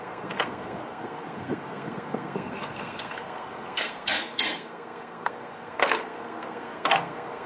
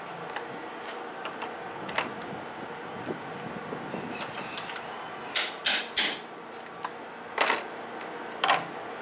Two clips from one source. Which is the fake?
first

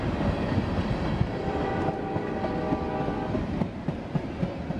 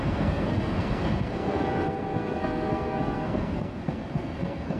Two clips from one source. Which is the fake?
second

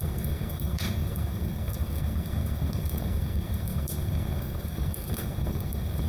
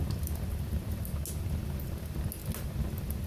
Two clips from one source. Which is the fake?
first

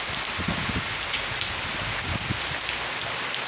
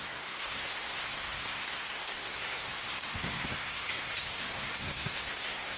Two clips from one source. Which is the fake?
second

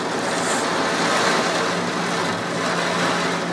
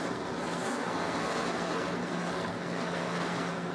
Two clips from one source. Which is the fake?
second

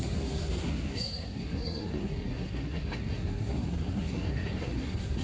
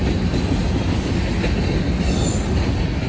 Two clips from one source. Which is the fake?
first